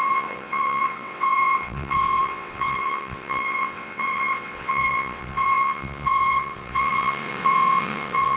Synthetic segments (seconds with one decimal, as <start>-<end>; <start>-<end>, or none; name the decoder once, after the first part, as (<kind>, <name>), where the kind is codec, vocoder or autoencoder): 0.0-8.4 (vocoder, WaveNeXt)